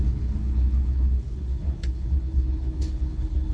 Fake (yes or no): yes